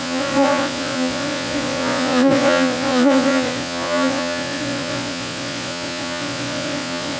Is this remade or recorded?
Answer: remade